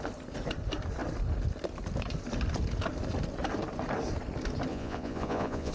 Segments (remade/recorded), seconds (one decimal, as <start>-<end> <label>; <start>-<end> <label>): 0.0-4.7 recorded; 4.7-5.7 remade